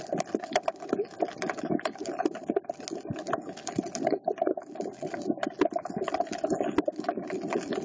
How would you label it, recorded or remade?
recorded